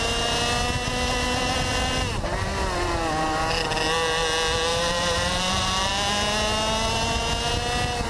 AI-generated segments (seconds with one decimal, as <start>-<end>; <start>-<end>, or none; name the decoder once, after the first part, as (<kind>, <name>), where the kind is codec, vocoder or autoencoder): 4.7-5.9 (vocoder, BigVGAN v2)